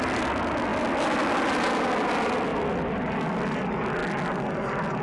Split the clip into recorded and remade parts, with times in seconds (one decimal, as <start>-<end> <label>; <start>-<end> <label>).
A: 0.0-5.0 recorded